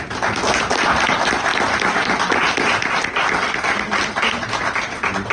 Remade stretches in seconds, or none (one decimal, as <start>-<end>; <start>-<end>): none